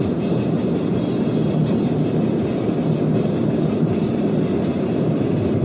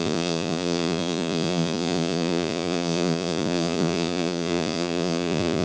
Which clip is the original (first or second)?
first